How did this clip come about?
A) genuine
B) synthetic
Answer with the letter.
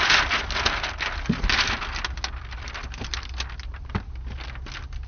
A